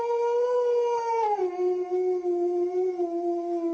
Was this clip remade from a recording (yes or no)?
no